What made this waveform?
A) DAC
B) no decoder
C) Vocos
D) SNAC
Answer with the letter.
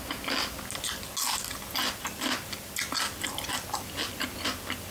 B